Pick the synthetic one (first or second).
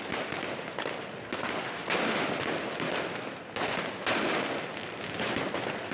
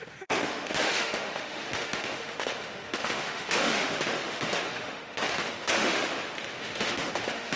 second